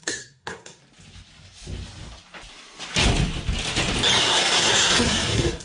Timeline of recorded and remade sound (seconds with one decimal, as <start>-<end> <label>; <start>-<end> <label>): 0.0-0.8 remade; 0.8-4.2 recorded; 4.2-5.6 remade